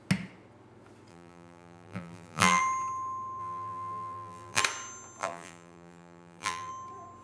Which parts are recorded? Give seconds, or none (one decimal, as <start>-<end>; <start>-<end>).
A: 0.0-1.1; 2.6-3.4; 4.6-5.2; 6.7-7.2